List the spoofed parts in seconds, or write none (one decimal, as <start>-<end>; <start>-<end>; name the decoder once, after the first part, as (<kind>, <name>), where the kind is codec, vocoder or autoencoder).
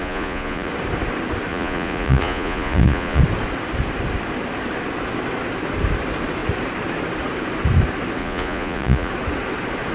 0.0-0.7 (vocoder, Vocos); 1.5-3.2; 8.2-9.1